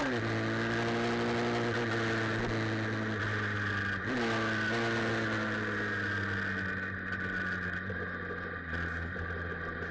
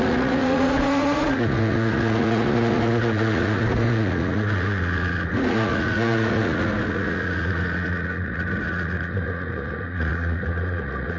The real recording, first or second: first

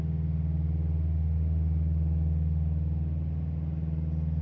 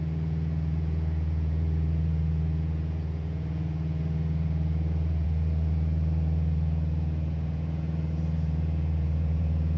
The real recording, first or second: first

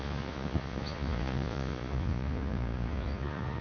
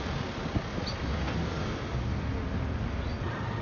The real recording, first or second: second